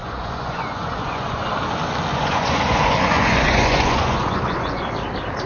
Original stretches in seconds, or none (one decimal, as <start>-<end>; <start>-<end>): 1.5-2.1; 4.8-5.5